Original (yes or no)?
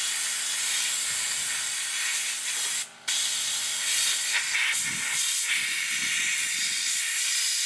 yes